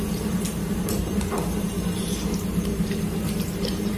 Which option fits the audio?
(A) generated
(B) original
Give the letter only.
A